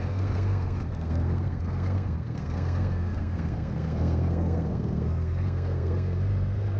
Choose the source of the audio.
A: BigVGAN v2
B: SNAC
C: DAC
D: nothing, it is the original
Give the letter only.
B